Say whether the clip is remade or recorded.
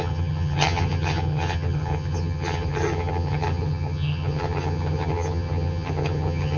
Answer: remade